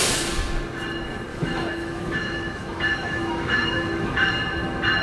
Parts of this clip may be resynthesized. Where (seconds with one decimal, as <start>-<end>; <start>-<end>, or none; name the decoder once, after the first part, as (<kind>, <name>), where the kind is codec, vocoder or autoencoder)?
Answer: 1.3-4.3 (autoencoder, DAC-VAE)